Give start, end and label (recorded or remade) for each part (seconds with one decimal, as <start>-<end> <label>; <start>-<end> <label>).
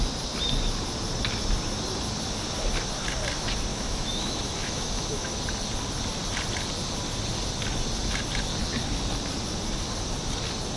0.0-3.7 recorded; 3.7-5.3 remade; 5.3-10.8 recorded